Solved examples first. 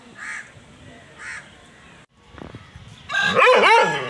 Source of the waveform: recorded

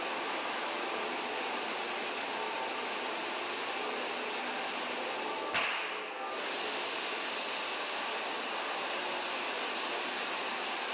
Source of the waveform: recorded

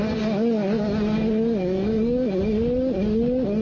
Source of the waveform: recorded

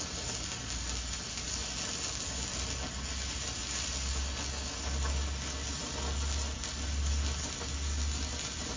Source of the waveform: recorded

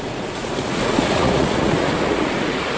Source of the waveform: remade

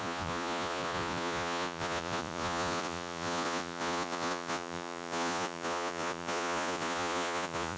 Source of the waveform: remade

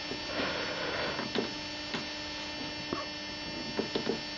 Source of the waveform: recorded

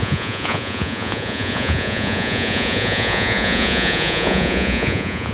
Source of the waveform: remade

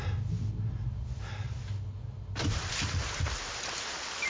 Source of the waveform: recorded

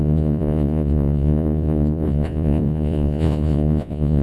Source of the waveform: remade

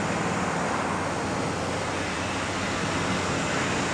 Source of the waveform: recorded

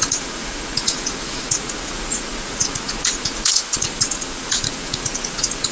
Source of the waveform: remade